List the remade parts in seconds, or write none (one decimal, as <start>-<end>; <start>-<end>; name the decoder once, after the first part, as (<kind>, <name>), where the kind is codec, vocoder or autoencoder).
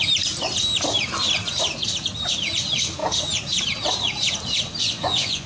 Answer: 4.8-5.5 (vocoder, Vocos)